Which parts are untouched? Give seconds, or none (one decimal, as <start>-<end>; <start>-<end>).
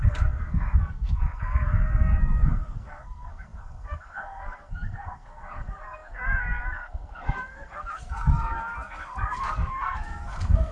none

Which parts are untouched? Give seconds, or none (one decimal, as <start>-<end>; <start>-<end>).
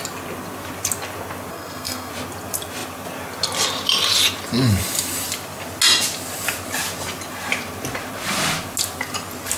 0.0-1.5; 2.1-9.6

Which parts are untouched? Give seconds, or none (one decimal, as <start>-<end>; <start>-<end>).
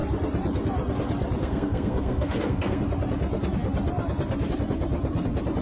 0.0-1.4; 2.8-5.6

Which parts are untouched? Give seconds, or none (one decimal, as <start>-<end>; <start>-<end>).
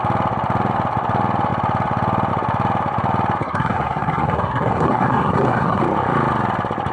0.0-3.4; 5.8-6.9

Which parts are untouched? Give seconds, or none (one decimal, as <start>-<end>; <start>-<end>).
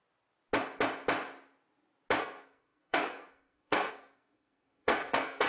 0.0-2.2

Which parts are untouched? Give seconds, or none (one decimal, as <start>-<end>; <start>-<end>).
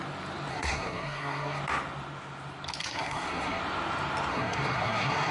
0.0-0.5; 1.6-2.8; 3.6-4.3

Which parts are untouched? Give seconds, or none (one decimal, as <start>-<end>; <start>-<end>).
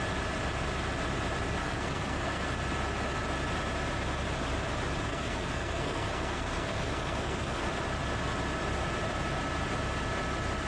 0.0-1.6; 2.5-5.1; 7.7-10.7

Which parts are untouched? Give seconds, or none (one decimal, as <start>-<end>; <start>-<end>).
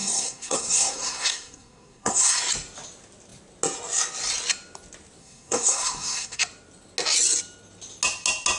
2.4-5.2; 6.4-8.6